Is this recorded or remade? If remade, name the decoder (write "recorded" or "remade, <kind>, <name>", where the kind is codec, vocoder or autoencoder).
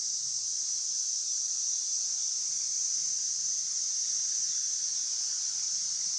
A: remade, vocoder, BigVGAN v2